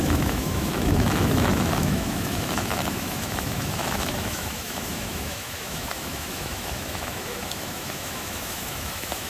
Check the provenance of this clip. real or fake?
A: fake